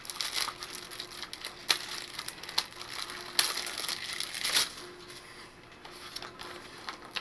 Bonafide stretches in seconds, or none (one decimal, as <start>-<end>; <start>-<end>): 0.0-7.2